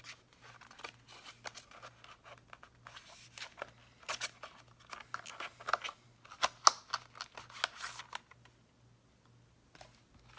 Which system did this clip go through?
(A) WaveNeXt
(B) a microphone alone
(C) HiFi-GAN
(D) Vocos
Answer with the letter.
B